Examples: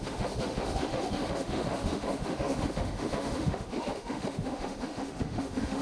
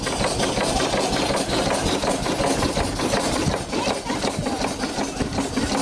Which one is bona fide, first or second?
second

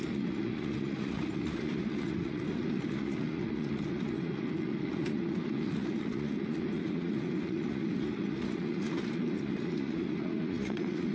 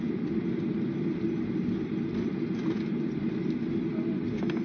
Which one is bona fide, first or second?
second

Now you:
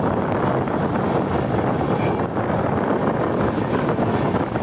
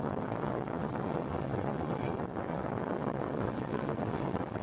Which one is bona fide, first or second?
first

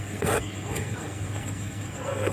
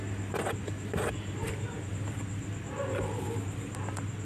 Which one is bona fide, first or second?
second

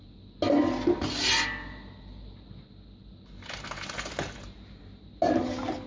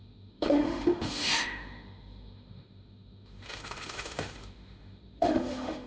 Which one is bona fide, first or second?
first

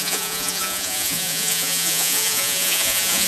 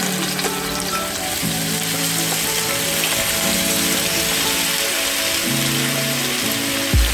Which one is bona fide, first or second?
second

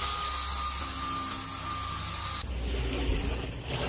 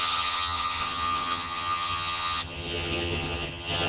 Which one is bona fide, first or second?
first